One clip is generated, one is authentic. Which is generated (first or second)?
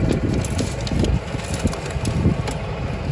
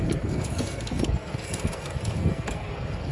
second